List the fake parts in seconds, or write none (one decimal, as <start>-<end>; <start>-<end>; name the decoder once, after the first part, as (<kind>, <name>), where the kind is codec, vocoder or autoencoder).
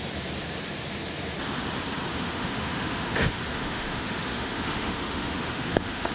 2.1-6.1 (autoencoder, DAC-VAE)